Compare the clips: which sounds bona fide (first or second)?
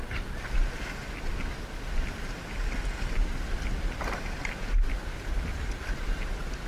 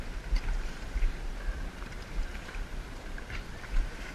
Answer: first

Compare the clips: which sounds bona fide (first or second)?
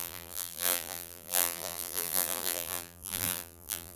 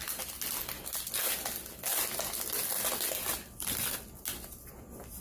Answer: second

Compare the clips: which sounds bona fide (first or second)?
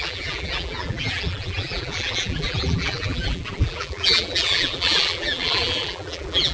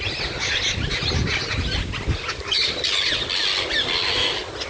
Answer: second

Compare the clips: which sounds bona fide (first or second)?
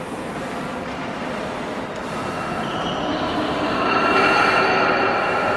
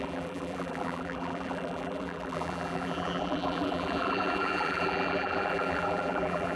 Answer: first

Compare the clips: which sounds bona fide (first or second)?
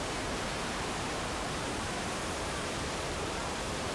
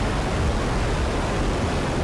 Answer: second